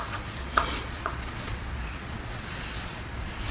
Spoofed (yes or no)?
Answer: yes